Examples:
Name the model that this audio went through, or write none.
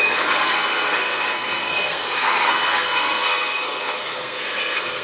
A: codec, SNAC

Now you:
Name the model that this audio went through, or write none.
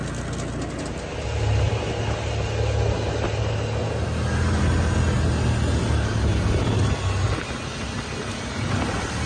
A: none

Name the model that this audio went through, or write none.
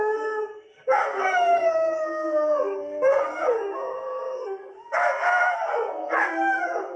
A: codec, SNAC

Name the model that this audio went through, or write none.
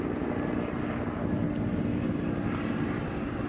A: none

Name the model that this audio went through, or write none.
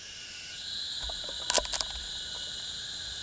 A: none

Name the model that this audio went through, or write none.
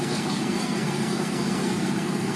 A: codec, SNAC